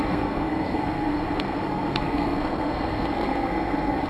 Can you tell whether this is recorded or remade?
remade